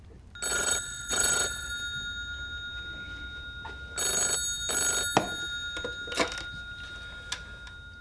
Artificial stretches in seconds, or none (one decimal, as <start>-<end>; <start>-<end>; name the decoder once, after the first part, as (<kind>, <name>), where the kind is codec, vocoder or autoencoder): 0.5-1.7 (vocoder, WaveNeXt)